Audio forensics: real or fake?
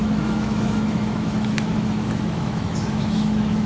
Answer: fake